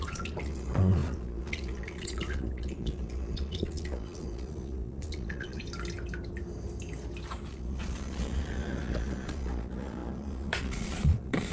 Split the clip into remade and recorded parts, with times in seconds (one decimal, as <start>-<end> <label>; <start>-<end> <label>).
0.0-5.6 remade; 5.6-7.5 recorded; 7.5-11.5 remade